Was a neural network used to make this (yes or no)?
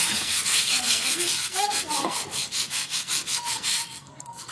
yes